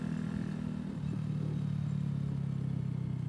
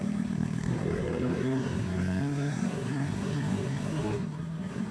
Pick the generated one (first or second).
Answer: second